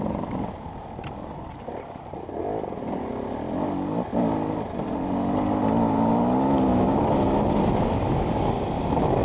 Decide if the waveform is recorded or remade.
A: recorded